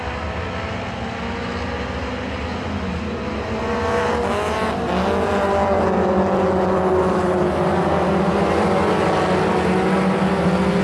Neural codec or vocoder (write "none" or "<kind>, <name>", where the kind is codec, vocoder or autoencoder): none